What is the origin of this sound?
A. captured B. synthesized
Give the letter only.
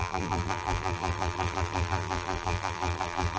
B